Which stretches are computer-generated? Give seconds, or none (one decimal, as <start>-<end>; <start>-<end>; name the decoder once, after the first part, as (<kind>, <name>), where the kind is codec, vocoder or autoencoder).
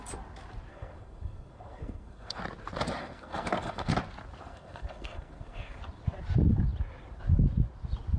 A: 0.7-2.4 (codec, SNAC); 3.0-3.9; 4.4-5.8